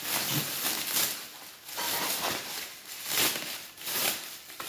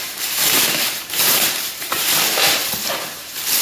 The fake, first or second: second